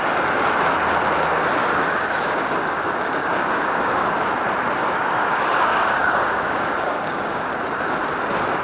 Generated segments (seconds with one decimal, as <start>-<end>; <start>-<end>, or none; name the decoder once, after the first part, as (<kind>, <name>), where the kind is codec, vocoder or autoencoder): 1.6-4.1 (codec, DAC); 4.8-7.5

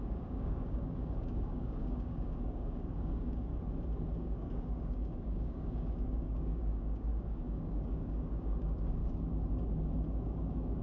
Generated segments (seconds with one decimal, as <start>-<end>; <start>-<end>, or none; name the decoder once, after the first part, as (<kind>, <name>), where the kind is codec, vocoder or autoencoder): 0.0-3.5 (codec, DAC); 4.2-9.0; 10.2-10.8

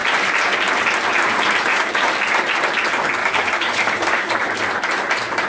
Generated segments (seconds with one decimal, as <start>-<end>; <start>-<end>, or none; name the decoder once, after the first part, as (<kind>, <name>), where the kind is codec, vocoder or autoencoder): 1.7-2.2 (codec, DAC); 3.2-4.3